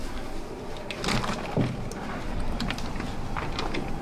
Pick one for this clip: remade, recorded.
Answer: recorded